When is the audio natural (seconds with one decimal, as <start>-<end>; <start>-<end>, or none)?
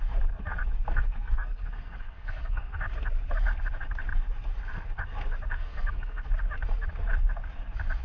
0.0-0.9; 2.8-5.5; 6.3-8.0